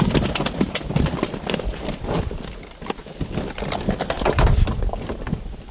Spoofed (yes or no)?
no